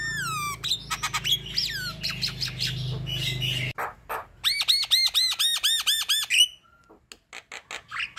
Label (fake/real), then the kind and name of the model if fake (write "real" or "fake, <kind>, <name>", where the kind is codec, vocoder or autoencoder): real